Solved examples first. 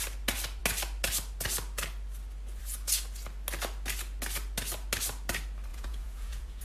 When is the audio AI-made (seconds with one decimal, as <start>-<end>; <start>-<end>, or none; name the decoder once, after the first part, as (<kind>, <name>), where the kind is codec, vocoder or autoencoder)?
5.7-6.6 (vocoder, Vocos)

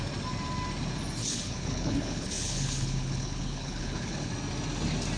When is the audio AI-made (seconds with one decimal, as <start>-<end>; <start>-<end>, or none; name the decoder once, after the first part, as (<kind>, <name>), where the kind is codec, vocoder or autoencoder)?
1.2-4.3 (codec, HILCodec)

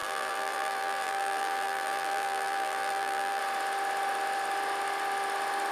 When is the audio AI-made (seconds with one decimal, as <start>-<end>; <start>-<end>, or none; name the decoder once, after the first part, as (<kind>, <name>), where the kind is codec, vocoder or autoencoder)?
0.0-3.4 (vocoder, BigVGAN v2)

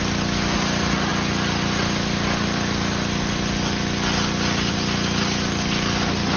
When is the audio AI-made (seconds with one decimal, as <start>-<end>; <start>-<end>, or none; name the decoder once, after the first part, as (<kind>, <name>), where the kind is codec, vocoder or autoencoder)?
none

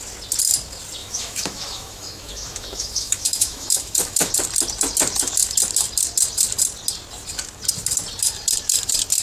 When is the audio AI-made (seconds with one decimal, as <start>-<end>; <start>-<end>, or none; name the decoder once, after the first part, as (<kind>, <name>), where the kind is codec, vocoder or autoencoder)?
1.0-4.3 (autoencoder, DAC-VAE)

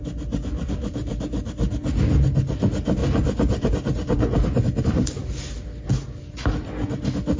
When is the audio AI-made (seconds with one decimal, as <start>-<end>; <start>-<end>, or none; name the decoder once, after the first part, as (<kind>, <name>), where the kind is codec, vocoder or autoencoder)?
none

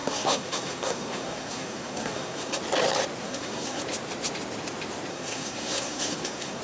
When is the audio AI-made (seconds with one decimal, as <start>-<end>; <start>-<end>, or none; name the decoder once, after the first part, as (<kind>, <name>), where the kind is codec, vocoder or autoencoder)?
0.0-2.6 (codec, SNAC); 3.2-3.8; 5.1-6.6

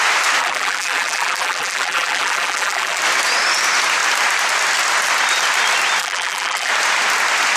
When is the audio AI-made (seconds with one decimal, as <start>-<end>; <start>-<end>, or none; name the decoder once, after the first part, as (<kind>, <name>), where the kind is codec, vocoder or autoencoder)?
0.4-3.0 (vocoder, BigVGAN v2); 6.0-6.7